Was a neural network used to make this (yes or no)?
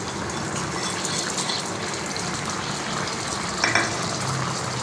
no